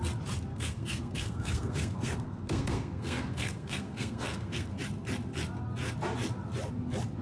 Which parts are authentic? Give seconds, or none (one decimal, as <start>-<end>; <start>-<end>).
0.0-0.5; 4.8-7.2